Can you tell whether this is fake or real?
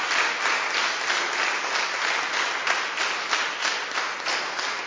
real